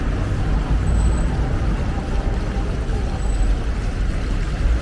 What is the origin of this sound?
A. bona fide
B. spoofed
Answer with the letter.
A